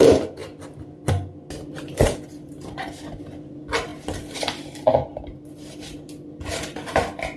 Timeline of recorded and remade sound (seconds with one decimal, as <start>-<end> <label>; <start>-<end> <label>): 0.0-7.4 recorded